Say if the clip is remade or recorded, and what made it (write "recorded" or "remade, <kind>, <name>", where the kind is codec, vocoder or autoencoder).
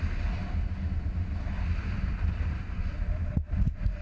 recorded